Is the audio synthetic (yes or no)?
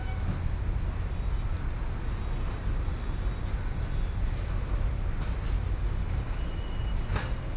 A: no